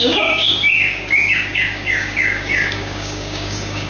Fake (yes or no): yes